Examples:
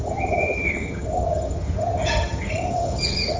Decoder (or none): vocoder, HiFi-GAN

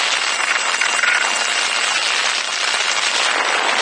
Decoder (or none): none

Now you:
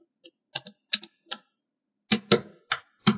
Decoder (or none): none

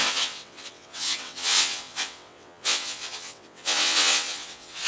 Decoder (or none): vocoder, WaveNeXt